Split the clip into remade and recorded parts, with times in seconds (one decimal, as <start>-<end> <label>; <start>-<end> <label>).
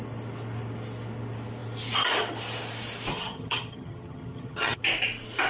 0.0-3.1 recorded; 3.1-4.8 remade; 4.8-5.5 recorded